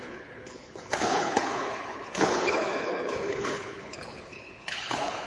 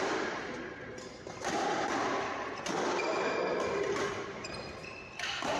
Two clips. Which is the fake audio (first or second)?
first